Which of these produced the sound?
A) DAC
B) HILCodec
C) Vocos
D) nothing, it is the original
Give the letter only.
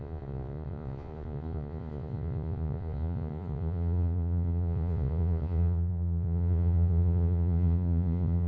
C